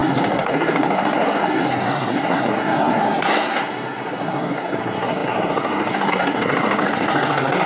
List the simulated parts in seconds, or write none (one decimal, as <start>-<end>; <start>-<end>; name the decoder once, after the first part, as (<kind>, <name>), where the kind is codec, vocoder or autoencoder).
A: 0.0-7.7 (codec, SNAC)

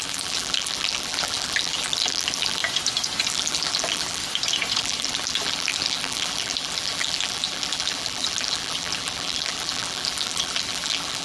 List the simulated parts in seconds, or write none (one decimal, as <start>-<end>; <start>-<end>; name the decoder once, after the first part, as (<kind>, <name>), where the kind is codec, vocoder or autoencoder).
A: 0.0-2.6 (vocoder, BigVGAN v2); 3.3-4.2; 4.8-11.2

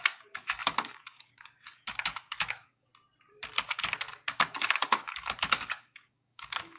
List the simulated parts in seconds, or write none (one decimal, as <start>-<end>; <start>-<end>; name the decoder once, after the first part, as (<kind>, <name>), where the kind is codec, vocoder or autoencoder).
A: 0.0-2.9 (codec, DAC); 4.5-6.8

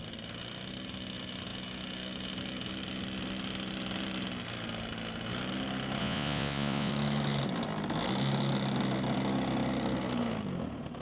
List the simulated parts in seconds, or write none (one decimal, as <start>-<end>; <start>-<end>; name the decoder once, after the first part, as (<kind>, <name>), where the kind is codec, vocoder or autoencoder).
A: 6.0-6.9 (vocoder, Vocos)

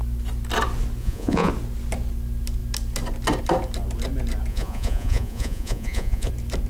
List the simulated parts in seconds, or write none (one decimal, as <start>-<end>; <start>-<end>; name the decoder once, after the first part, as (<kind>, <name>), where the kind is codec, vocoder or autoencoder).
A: 1.0-1.5 (vocoder, Vocos); 4.5-6.3

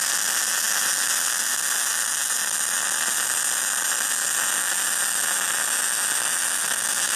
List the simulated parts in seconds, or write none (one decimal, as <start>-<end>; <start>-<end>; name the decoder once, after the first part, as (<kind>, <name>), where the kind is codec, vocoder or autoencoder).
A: none

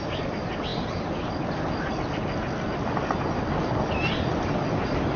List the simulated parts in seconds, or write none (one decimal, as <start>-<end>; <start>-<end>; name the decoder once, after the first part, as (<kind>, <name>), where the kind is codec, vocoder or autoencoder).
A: none

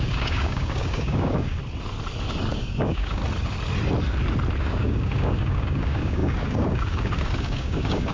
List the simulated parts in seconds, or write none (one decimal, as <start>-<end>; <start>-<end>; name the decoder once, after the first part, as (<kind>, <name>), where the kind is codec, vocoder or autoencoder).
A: 0.0-1.6 (codec, DAC); 2.5-3.2; 4.6-8.1